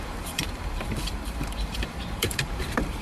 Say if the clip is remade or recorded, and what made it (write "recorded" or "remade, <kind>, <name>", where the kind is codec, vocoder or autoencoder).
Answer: remade, vocoder, BigVGAN v2